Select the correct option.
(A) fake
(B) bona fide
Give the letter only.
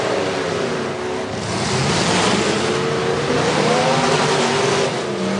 B